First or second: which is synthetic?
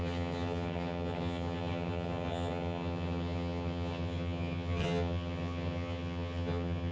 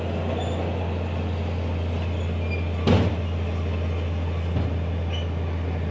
first